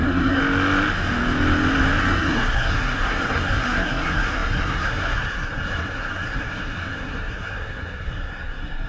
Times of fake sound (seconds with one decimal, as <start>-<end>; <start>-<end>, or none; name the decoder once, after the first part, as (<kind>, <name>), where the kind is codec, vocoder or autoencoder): 0.0-0.4 (codec, SNAC); 2.0-8.9